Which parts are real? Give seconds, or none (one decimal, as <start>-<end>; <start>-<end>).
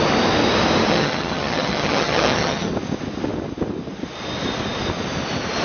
0.0-0.9; 2.7-5.6